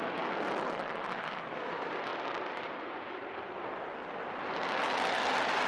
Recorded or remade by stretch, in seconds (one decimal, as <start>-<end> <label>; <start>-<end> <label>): 0.0-5.7 recorded